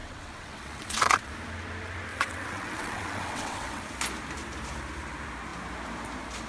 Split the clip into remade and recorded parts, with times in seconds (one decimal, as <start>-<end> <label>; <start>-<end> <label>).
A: 0.0-1.3 remade; 1.3-2.1 recorded; 2.1-3.8 remade; 3.8-6.5 recorded